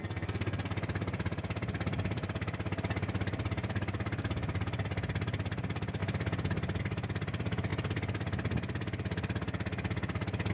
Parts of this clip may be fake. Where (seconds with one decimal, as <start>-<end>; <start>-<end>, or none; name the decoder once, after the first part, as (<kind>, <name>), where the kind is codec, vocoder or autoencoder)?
0.0-0.7 (codec, SNAC)